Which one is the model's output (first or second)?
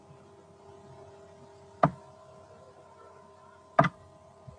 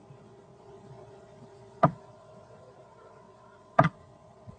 second